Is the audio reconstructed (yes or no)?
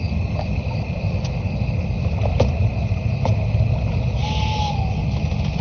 no